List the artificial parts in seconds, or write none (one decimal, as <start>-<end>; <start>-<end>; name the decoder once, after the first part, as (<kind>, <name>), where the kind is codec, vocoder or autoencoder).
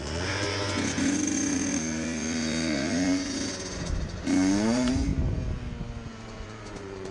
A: 0.0-5.1 (vocoder, Vocos); 6.1-7.1